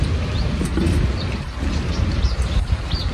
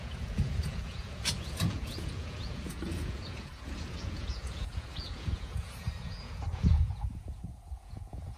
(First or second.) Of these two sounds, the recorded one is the first